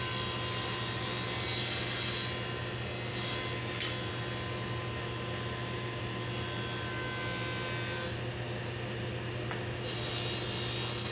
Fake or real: real